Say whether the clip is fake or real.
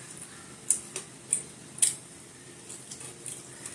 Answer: real